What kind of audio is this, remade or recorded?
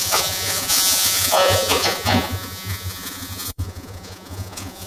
remade